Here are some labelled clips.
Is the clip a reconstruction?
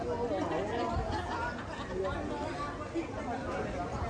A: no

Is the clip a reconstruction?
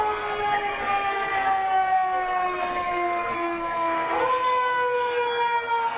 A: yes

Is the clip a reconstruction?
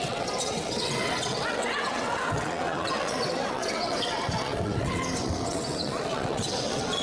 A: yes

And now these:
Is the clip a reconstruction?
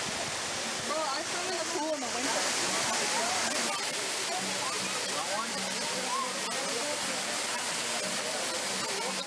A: no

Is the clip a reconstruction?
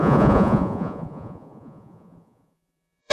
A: yes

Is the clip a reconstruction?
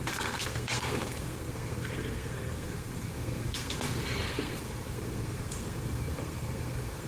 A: yes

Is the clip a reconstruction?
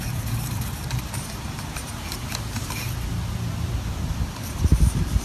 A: yes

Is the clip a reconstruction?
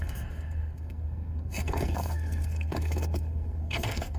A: yes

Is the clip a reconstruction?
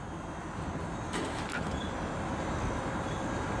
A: yes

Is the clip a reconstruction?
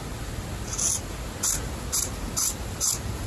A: no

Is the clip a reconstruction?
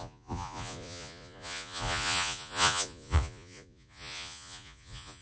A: yes